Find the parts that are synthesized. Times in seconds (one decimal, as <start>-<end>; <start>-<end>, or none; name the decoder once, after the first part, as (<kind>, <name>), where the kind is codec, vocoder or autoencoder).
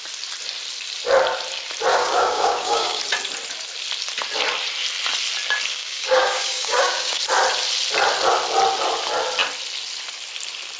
1.9-3.0 (codec, DAC); 5.7-7.2